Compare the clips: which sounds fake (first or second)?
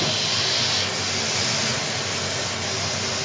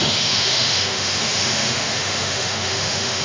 second